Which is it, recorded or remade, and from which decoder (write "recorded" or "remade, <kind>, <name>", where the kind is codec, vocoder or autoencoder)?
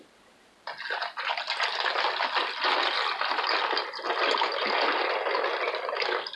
recorded